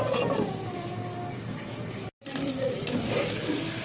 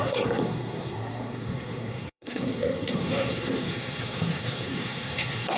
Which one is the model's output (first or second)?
second